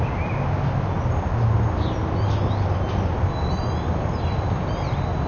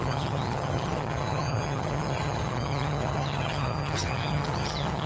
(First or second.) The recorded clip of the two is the first